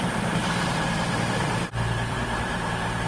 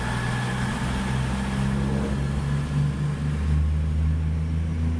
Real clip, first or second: second